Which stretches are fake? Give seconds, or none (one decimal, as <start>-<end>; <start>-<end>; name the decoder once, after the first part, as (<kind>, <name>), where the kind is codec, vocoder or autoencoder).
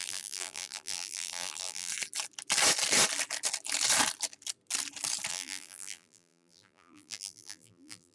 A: 0.0-1.9 (vocoder, BigVGAN v2); 5.3-8.1